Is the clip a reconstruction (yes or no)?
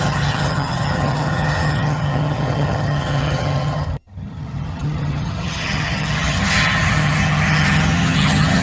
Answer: yes